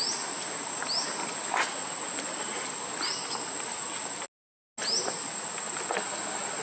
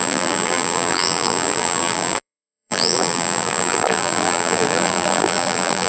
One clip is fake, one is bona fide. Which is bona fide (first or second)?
first